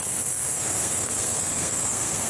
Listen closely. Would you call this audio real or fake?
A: fake